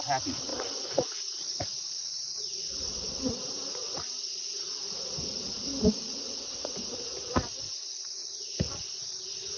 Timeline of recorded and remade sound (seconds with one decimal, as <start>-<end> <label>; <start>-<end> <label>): 0.0-5.7 remade; 5.7-7.2 recorded; 7.2-9.6 remade